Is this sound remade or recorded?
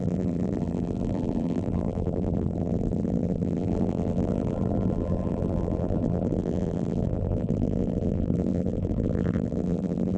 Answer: remade